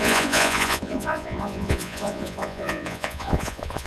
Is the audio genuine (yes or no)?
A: no